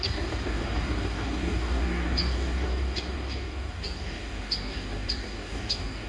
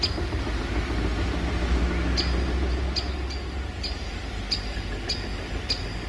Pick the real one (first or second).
second